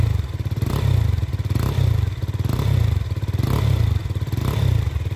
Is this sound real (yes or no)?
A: no